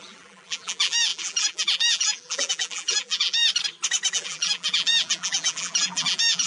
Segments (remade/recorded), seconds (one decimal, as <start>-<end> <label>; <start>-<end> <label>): 0.0-3.4 remade; 3.4-4.1 recorded; 4.1-6.5 remade